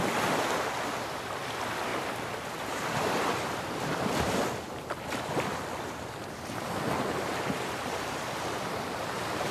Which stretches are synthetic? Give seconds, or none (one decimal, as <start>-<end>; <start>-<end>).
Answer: 0.0-9.5